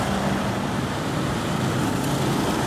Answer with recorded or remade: recorded